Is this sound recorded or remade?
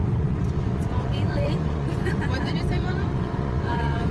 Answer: remade